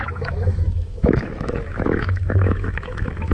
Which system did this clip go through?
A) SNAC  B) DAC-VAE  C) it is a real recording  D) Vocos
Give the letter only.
B